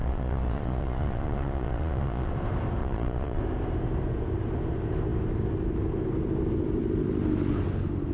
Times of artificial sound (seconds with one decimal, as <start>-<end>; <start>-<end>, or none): 0.0-2.3; 2.8-3.4